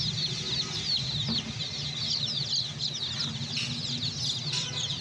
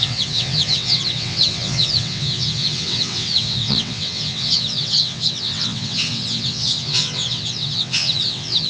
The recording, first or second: first